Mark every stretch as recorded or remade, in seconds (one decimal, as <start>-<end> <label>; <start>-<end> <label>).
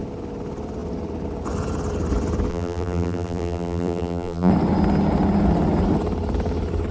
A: 0.0-2.5 recorded; 2.5-4.5 remade; 4.5-6.9 recorded